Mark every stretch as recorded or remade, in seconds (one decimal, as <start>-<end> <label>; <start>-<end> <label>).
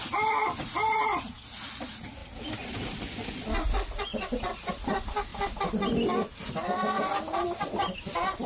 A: 0.0-1.0 remade; 1.0-2.2 recorded; 2.2-2.9 remade; 2.9-4.1 recorded; 4.1-4.7 remade; 4.7-8.5 recorded